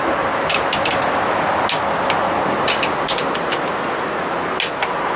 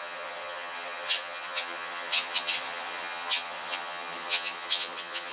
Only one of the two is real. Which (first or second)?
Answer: first